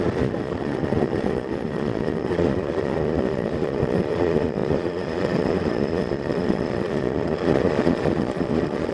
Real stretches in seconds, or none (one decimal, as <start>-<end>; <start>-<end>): none